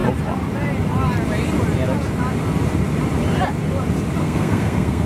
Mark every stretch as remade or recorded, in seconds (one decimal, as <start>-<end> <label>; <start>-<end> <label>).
0.0-4.2 recorded; 4.2-5.1 remade

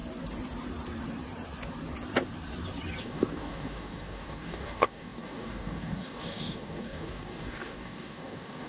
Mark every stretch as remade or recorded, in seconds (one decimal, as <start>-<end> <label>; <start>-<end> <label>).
0.0-3.0 recorded; 3.0-8.7 remade